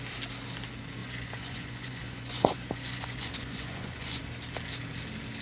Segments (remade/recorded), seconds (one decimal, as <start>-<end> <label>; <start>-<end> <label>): 0.0-1.0 recorded; 1.0-4.2 remade; 4.2-5.4 recorded